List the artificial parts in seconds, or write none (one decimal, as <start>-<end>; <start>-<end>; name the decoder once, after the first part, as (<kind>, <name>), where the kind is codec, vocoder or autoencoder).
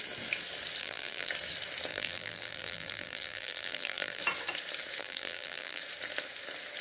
0.8-1.3 (vocoder, BigVGAN v2); 1.9-4.2; 5.0-5.8